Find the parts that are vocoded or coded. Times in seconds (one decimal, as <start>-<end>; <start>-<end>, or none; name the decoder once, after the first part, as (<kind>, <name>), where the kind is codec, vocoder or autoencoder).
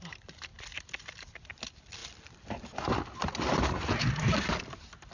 none